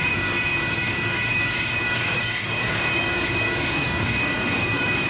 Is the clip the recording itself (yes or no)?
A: no